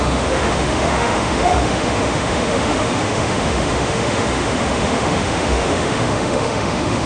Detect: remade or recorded remade